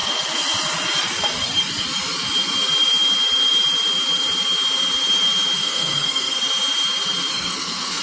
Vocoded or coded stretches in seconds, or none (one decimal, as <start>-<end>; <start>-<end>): 5.6-6.4; 7.3-8.0